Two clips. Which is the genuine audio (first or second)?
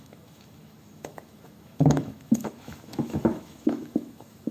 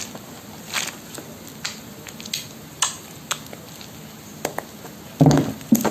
second